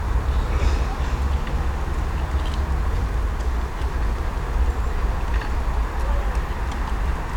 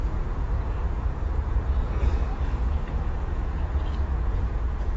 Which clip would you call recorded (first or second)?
first